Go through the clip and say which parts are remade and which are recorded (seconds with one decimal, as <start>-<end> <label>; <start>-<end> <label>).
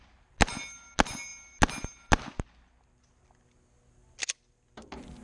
0.0-5.2 recorded